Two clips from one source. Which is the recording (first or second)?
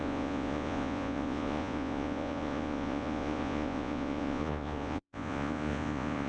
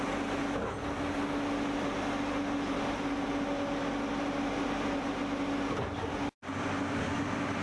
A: second